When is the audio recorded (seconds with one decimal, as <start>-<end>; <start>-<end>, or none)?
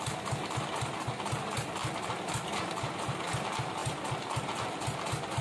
0.0-5.4